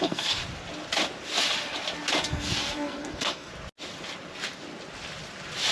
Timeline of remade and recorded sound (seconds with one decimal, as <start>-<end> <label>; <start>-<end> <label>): 0.0-0.4 remade; 0.4-2.3 recorded; 2.3-3.5 remade; 3.5-5.7 recorded